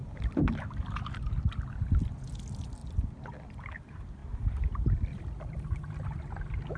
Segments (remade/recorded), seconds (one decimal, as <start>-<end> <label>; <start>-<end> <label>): 0.0-1.2 remade; 1.2-2.8 recorded; 2.8-3.5 remade; 3.5-4.2 recorded; 4.2-5.6 remade; 5.6-6.8 recorded